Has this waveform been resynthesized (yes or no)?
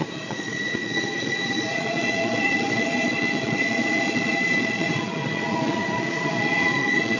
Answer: yes